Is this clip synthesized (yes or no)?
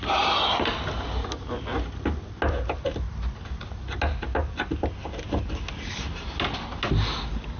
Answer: no